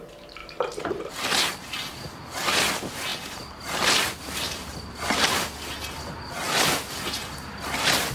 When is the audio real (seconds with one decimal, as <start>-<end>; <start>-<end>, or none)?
0.0-8.1